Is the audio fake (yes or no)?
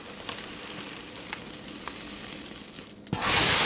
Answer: no